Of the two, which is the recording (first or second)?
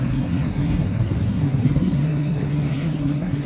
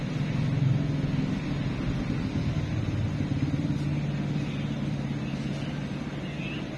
second